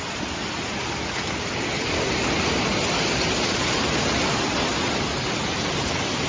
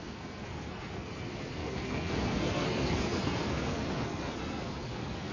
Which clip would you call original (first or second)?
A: first